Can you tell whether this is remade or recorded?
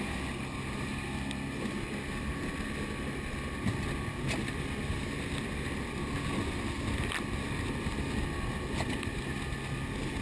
recorded